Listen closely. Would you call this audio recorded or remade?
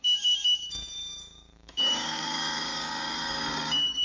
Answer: remade